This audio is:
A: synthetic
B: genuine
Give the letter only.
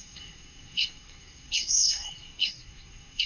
A